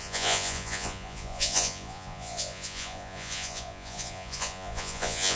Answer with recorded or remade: remade